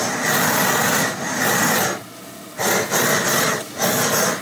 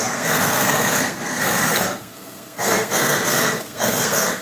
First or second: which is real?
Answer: first